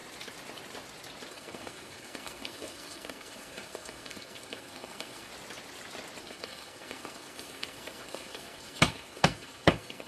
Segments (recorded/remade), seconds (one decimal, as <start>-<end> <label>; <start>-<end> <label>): 0.0-1.3 recorded; 1.3-5.3 remade; 5.3-6.2 recorded; 6.2-10.1 remade